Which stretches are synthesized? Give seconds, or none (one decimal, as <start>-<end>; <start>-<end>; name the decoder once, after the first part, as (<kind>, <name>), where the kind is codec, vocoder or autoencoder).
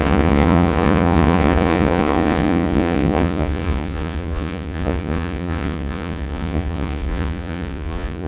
0.0-8.3 (vocoder, Vocos)